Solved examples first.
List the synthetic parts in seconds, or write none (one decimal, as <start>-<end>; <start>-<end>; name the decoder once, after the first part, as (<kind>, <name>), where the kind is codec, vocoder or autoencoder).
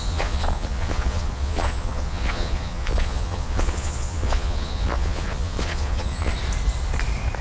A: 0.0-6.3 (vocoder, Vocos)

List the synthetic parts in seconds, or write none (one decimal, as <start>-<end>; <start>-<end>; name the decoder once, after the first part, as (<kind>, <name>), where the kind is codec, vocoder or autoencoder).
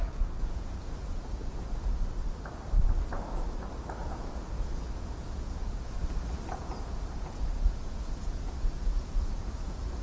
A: 0.0-1.9 (vocoder, Vocos); 4.0-6.0; 6.5-10.0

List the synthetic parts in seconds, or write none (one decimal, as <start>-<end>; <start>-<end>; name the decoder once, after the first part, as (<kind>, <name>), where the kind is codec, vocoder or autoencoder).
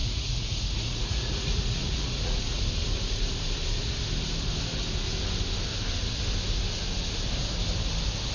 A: 0.0-2.6 (vocoder, Vocos)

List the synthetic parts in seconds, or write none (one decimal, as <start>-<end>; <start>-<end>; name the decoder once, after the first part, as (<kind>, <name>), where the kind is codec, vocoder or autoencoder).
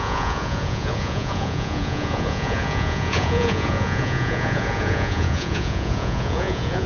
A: 0.0-6.9 (vocoder, Vocos)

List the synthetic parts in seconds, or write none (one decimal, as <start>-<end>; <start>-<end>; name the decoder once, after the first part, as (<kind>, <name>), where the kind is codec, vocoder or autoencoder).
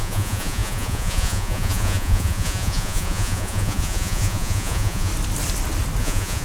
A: 0.0-5.1 (vocoder, Vocos); 6.0-6.4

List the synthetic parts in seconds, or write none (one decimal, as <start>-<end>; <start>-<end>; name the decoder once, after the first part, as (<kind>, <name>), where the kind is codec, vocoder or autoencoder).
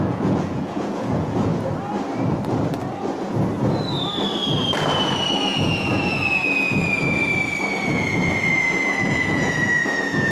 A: 0.0-1.5 (vocoder, Vocos); 5.3-7.2; 7.7-10.3